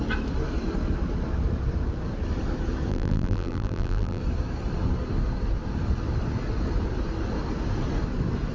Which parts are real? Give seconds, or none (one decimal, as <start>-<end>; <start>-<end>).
0.0-2.9; 4.2-8.5